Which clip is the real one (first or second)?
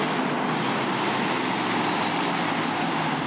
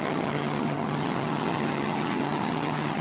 first